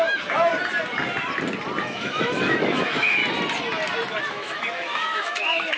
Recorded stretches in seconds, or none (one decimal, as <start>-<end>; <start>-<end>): 0.5-1.8; 3.2-4.2